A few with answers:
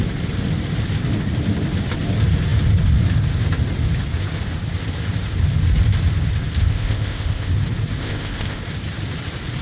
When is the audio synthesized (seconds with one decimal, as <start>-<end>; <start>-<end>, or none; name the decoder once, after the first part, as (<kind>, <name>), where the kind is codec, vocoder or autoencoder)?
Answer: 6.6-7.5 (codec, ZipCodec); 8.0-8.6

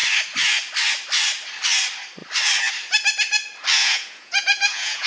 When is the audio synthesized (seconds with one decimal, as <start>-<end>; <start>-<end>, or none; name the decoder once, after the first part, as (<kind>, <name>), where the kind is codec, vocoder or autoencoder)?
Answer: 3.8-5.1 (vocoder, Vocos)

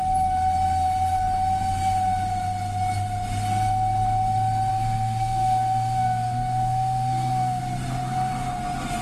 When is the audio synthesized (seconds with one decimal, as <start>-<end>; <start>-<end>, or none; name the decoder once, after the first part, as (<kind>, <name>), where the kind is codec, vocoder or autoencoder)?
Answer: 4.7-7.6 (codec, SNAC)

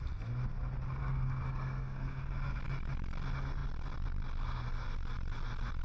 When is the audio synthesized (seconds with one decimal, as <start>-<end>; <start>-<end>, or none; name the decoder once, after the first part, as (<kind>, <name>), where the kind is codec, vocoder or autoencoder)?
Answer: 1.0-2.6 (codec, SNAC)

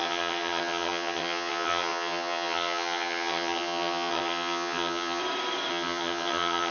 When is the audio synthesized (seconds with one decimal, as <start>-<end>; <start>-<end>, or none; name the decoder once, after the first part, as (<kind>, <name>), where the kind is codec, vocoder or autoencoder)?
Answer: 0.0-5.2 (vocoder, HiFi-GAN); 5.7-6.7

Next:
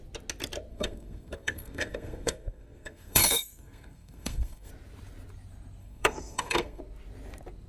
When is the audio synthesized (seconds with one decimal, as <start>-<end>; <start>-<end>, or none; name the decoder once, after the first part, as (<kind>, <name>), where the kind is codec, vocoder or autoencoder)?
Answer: 0.7-4.7 (codec, SNAC); 5.8-6.8

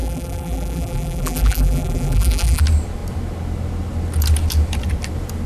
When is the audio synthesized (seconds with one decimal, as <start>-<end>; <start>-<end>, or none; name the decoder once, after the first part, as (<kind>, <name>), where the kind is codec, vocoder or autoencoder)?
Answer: 0.0-2.6 (vocoder, BigVGAN v2)

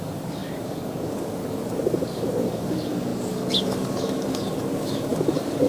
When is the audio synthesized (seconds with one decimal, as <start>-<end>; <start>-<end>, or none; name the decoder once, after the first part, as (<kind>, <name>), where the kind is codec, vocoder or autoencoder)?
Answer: 0.0-5.7 (codec, DAC)